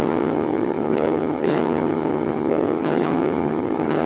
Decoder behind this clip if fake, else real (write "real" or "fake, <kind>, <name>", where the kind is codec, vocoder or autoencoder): fake, vocoder, HiFi-GAN